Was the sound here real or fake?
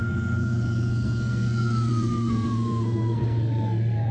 fake